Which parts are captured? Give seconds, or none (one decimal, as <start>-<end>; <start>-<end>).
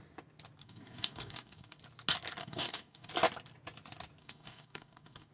0.0-0.6; 1.8-2.4; 3.1-4.2